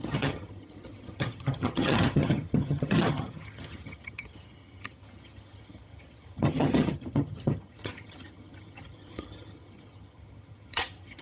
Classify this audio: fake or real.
fake